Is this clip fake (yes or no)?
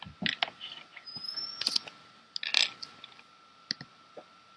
no